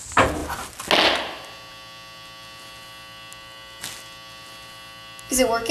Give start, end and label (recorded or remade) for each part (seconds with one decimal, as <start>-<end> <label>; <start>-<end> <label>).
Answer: 0.0-5.7 recorded